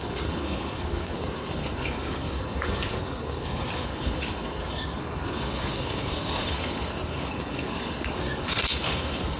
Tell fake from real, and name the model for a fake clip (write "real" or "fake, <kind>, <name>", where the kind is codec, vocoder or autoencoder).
fake, codec, SNAC